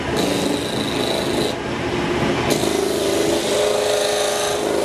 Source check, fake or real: real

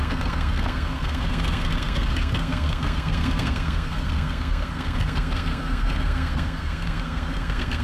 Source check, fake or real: fake